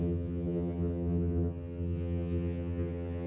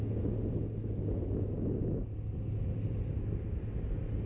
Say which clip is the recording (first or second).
second